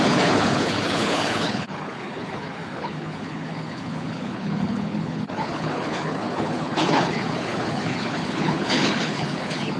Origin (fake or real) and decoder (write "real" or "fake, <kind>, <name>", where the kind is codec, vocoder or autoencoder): fake, codec, HILCodec